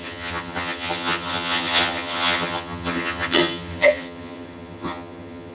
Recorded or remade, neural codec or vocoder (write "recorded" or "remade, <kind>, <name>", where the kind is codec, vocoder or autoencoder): remade, vocoder, HiFi-GAN